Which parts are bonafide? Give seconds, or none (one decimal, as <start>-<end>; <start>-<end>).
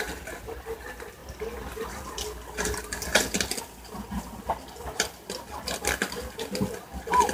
0.0-7.3